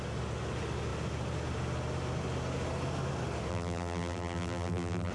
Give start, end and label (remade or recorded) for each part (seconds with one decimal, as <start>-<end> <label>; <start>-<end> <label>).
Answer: 0.0-3.5 recorded; 3.5-5.1 remade